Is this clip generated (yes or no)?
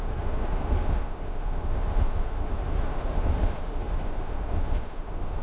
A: yes